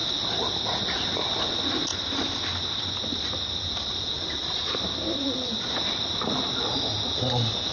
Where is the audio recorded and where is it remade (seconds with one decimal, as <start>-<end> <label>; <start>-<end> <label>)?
0.0-0.7 remade; 0.7-1.9 recorded; 1.9-5.7 remade; 5.7-7.7 recorded